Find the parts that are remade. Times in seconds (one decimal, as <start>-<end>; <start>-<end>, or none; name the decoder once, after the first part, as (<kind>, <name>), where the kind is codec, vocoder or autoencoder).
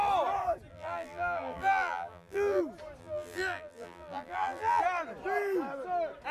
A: 0.7-2.6 (vocoder, BigVGAN v2); 3.0-4.8